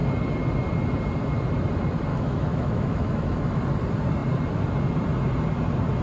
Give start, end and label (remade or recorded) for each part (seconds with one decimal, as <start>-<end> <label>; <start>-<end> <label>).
0.0-2.1 recorded; 2.1-3.6 remade; 3.6-6.0 recorded